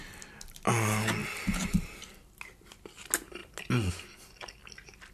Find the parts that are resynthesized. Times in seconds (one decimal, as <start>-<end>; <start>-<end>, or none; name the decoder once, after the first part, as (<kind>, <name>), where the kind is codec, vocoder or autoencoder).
none